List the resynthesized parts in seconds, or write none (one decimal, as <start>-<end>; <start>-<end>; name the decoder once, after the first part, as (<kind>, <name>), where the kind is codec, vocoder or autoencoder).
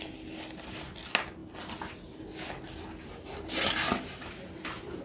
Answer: none